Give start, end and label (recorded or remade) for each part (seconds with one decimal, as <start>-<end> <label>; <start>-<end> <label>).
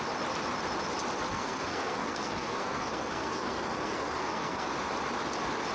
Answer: 0.0-1.3 recorded; 1.3-4.7 remade; 4.7-5.7 recorded